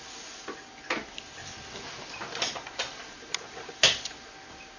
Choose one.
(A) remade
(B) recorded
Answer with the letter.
B